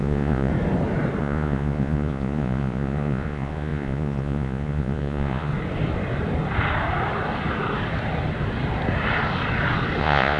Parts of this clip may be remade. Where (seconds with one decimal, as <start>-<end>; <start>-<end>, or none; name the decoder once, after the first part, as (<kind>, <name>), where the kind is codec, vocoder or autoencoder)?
0.0-0.5 (vocoder, Vocos); 1.2-5.5; 10.0-10.4